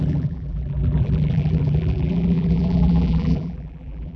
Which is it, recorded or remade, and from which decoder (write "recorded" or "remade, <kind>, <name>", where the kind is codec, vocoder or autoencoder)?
remade, vocoder, BigVGAN v2